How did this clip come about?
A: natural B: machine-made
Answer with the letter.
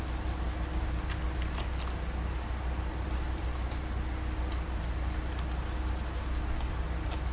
B